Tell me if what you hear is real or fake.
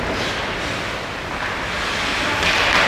real